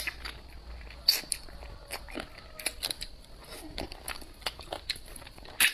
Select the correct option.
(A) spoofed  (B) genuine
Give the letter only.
B